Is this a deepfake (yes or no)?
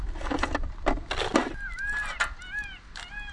no